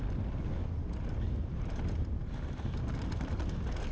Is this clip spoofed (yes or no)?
no